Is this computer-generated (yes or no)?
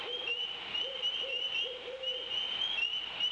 yes